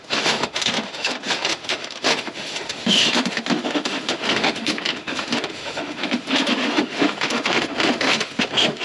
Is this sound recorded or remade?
remade